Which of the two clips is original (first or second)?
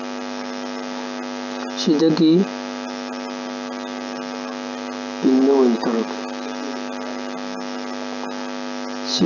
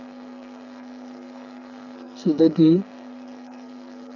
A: first